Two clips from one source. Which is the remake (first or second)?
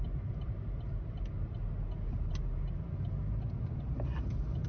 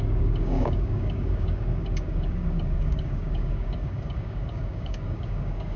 second